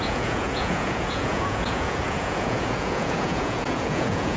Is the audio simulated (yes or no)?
yes